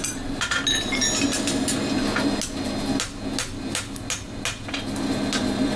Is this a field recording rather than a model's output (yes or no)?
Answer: yes